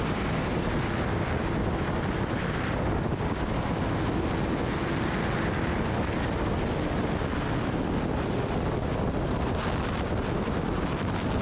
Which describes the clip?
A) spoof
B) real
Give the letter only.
B